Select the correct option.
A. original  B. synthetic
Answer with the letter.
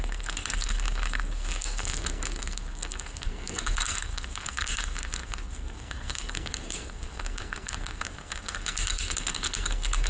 B